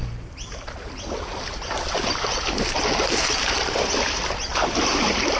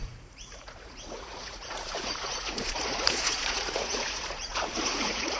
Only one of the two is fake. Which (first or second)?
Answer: second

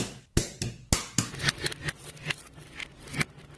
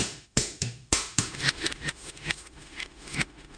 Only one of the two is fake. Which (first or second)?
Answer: second